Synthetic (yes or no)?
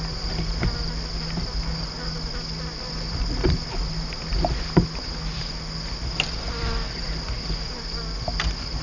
no